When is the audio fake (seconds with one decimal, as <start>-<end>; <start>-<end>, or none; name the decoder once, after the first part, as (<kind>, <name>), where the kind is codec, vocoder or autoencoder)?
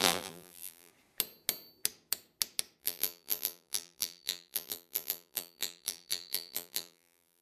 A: 0.0-0.9 (vocoder, BigVGAN v2); 2.8-7.4